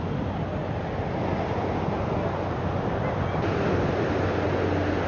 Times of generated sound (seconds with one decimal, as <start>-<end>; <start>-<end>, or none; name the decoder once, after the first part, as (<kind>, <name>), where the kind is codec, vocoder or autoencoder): none